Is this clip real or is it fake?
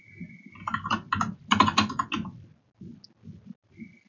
real